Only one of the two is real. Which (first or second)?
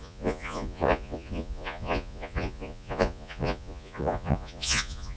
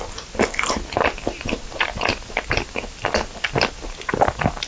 second